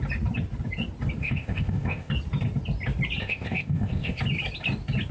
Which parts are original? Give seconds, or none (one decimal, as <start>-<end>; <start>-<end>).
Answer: 0.0-1.2; 2.1-3.2; 4.2-5.1